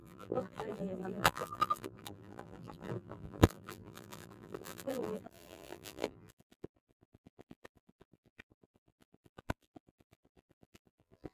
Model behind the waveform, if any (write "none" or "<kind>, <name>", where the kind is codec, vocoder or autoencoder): vocoder, BigVGAN v2